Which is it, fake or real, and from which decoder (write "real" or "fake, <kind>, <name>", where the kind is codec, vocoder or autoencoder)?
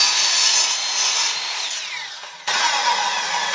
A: fake, vocoder, Vocos